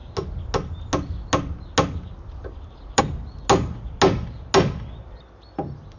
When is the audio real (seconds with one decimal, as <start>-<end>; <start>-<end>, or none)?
0.0-6.0

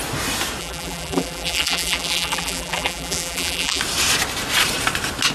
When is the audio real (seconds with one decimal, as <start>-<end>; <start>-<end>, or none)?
0.0-0.6; 3.8-5.3

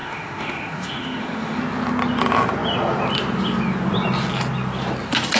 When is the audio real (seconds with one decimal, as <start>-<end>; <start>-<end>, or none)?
1.6-5.4

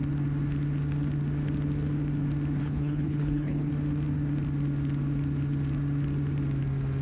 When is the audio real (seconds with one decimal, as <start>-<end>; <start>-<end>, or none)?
0.0-2.6; 3.7-7.0